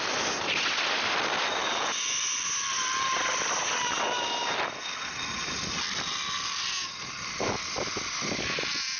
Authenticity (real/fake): real